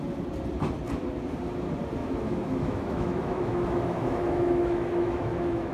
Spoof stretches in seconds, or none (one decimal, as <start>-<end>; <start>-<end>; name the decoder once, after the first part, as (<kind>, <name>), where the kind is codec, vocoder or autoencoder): 2.0-5.7 (autoencoder, DAC-VAE)